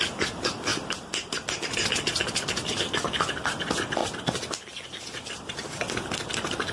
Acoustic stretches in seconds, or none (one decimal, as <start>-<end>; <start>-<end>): 0.0-0.7; 2.8-6.7